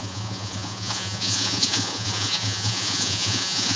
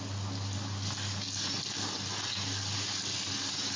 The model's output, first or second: first